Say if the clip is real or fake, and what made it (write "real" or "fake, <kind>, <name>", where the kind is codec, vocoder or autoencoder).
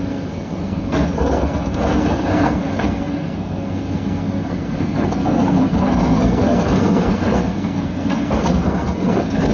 fake, codec, SNAC